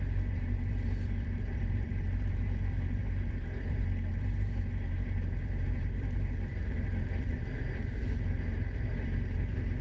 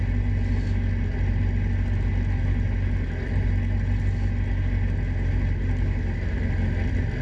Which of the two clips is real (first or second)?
second